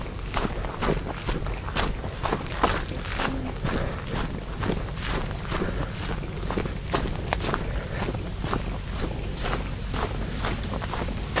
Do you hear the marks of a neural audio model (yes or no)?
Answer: no